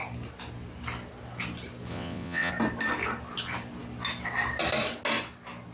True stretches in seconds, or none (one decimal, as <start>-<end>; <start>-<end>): 0.0-1.9; 2.5-5.7